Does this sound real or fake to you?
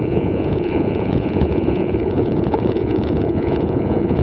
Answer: fake